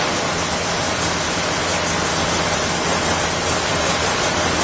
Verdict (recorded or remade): recorded